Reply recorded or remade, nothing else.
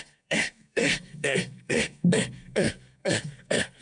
remade